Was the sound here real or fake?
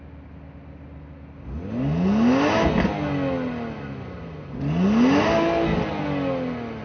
real